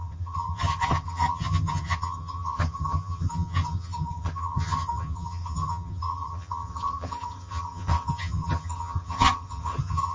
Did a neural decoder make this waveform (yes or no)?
yes